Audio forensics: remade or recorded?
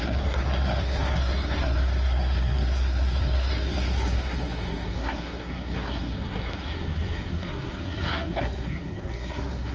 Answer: remade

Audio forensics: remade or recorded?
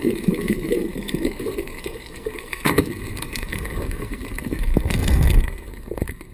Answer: remade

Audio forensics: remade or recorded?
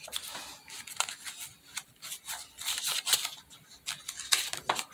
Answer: recorded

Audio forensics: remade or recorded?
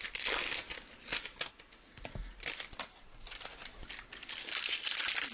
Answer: recorded